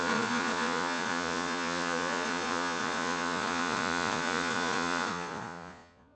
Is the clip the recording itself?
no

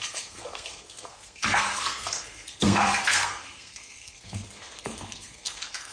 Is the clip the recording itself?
no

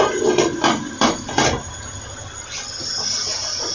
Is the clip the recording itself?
yes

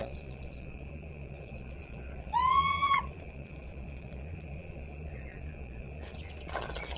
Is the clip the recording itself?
no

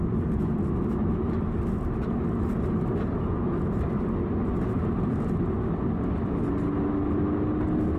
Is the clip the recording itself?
yes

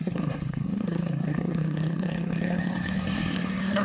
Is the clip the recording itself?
no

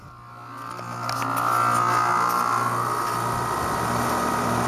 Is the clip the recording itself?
yes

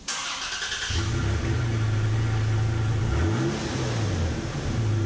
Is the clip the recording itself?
yes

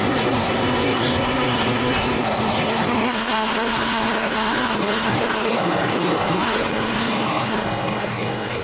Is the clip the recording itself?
no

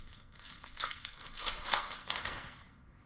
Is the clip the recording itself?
no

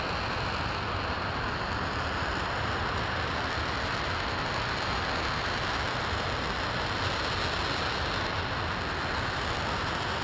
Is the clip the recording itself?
yes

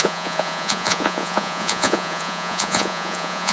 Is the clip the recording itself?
no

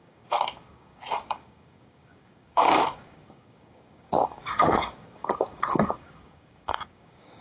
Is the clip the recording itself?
no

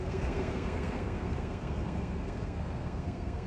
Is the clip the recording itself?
no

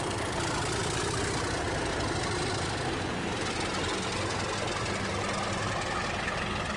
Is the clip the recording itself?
yes